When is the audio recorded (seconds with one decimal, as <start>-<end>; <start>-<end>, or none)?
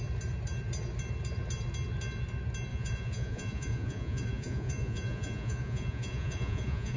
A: 0.0-2.7